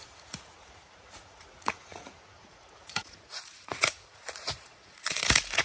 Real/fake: fake